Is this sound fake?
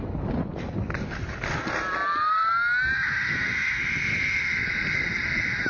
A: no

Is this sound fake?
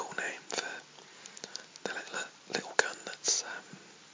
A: no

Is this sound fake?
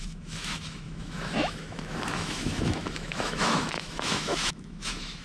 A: yes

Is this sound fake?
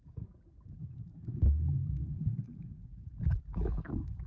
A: yes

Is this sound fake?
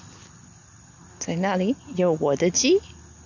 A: no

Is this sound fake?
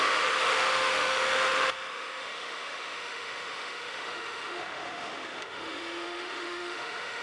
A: yes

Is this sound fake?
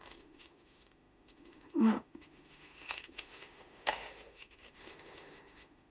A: yes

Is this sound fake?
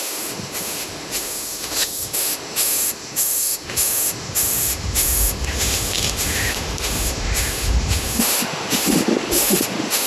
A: yes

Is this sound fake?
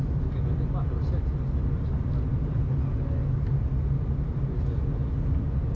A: no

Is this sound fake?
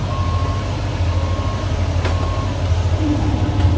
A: no